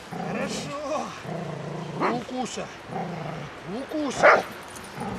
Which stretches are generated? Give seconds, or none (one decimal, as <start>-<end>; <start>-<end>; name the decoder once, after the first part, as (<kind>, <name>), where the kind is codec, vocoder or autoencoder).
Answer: none